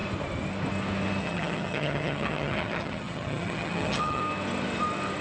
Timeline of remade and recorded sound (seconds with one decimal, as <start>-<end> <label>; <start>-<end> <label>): 0.0-1.2 recorded; 1.2-4.2 remade; 4.2-5.2 recorded